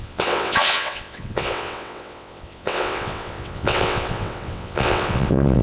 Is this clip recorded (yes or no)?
no